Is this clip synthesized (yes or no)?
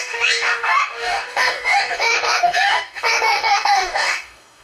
yes